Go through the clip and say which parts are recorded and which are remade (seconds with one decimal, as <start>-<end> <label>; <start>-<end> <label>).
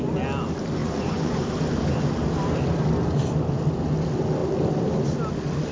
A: 0.0-0.8 recorded; 0.8-1.4 remade; 1.4-5.7 recorded